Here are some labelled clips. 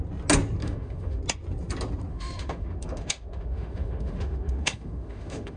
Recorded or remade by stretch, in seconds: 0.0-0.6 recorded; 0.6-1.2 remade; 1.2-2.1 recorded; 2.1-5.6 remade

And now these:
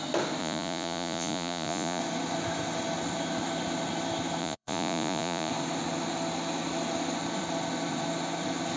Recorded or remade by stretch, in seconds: 0.0-0.4 recorded; 0.4-2.0 remade; 2.0-4.4 recorded; 4.4-5.5 remade; 5.5-8.8 recorded

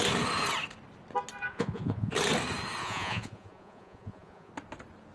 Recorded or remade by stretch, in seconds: 0.0-1.5 recorded; 1.5-2.1 remade; 2.1-2.8 recorded; 2.8-4.5 remade; 4.5-5.1 recorded

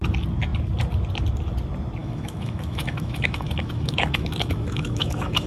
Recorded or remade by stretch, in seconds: 0.0-2.0 recorded; 2.0-5.5 remade

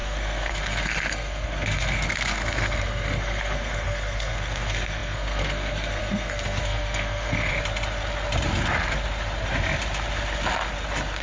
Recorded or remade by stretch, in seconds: 0.0-7.5 remade; 7.5-11.2 recorded

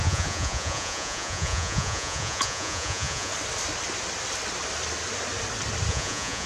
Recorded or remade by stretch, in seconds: 0.0-3.3 remade; 3.3-5.9 recorded; 5.9-6.5 remade

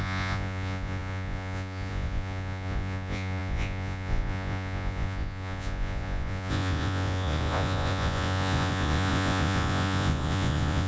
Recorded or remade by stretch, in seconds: 0.0-10.9 remade